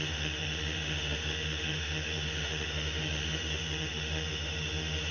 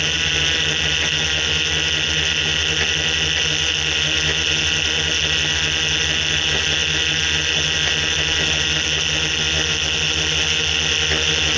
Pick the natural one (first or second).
second